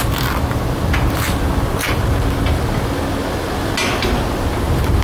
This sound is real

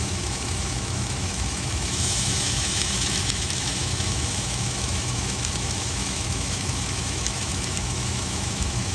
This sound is fake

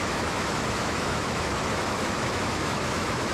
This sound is fake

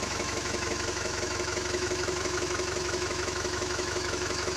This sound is fake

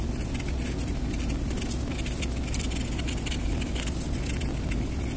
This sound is real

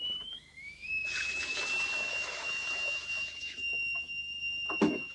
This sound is fake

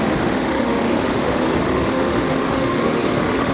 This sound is fake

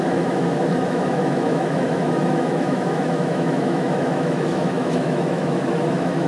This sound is fake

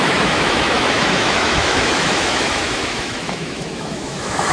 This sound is fake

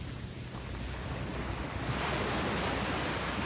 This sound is real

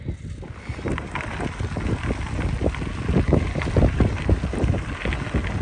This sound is real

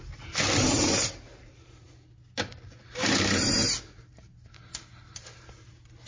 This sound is real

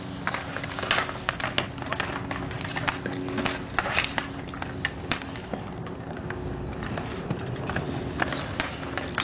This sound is real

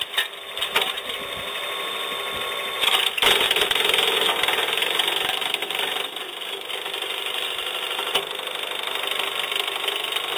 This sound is real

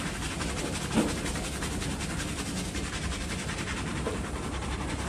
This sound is real